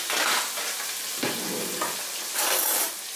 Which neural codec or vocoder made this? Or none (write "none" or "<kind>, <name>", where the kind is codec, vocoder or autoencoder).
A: none